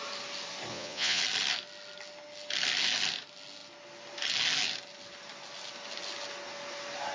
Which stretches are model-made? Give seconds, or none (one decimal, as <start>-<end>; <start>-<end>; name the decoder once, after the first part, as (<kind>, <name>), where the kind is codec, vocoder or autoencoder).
0.7-1.2 (vocoder, Vocos)